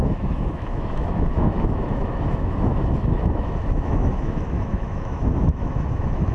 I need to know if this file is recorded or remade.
remade